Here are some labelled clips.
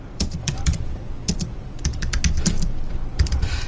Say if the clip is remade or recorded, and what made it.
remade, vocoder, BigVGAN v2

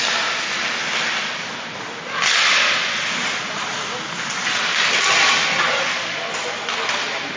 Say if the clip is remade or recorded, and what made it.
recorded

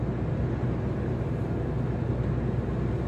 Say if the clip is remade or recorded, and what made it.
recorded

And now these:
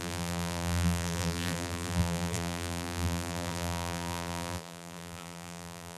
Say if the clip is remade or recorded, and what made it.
remade, vocoder, BigVGAN v2